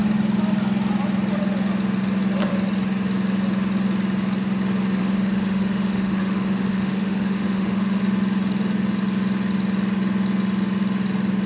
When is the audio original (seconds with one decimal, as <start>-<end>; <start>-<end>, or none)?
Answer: 0.0-5.0; 8.0-11.5